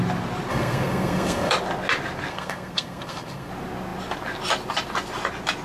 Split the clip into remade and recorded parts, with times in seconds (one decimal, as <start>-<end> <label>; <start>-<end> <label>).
0.0-0.5 recorded; 0.5-1.5 remade; 1.5-2.3 recorded; 2.3-3.5 remade; 3.5-5.6 recorded